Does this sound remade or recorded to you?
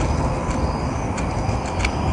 recorded